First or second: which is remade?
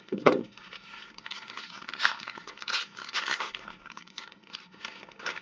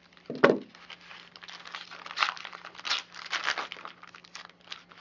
first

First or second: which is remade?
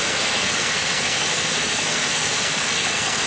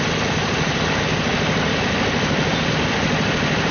first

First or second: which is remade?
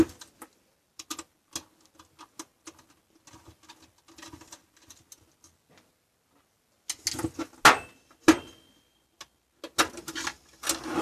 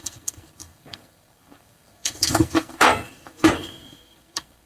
second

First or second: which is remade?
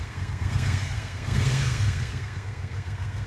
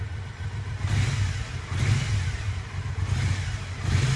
first